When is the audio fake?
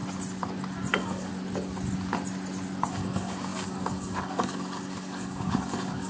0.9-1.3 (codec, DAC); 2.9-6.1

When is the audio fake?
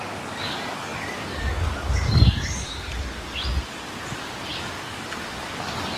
0.0-3.4 (codec, DAC); 4.4-6.0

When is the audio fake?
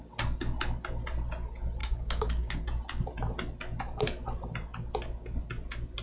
1.8-2.6 (codec, DAC)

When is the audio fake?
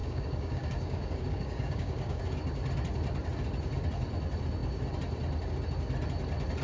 0.0-2.2 (codec, DAC)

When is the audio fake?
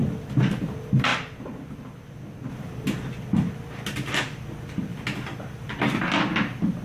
none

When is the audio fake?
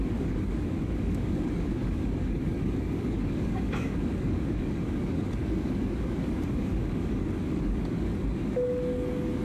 0.0-9.4 (codec, DAC)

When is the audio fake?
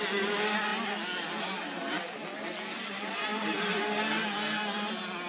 none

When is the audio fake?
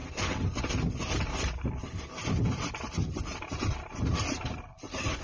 none